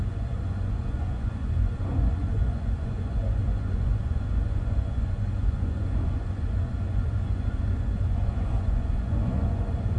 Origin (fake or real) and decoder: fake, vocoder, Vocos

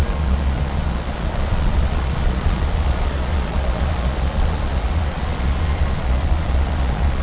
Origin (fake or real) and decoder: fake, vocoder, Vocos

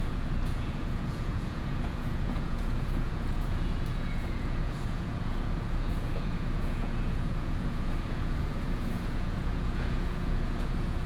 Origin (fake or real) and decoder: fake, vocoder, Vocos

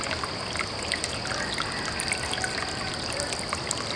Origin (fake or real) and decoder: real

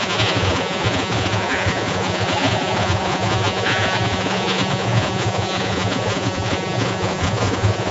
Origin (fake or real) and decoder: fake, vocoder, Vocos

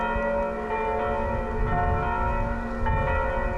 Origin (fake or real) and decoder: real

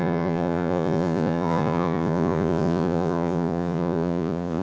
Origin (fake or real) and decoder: fake, vocoder, Vocos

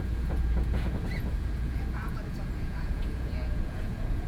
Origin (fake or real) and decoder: fake, vocoder, Vocos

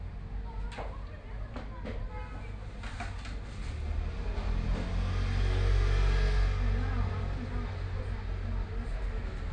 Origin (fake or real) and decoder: real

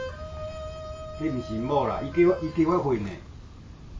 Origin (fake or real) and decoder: real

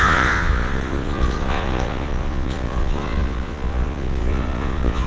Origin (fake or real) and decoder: fake, vocoder, Vocos